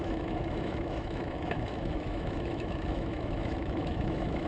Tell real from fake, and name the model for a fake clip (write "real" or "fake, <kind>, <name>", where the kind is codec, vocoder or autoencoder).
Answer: fake, autoencoder, DAC-VAE